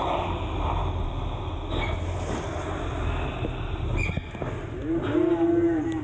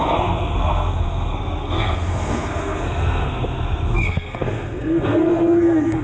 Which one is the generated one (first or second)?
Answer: second